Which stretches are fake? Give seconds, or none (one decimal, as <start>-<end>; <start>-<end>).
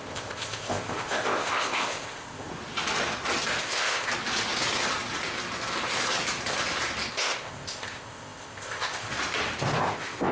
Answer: 0.0-2.5; 3.6-4.1; 7.1-9.1; 9.8-10.3